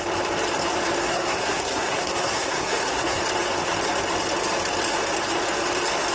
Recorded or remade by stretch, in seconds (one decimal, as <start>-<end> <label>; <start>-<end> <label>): 0.0-1.0 recorded; 1.0-3.2 remade; 3.2-6.1 recorded